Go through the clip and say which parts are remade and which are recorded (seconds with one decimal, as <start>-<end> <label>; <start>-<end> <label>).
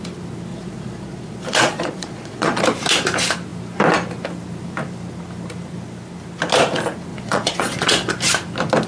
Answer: 0.0-0.5 recorded; 0.5-2.6 remade; 2.6-7.1 recorded; 7.1-8.1 remade; 8.1-8.9 recorded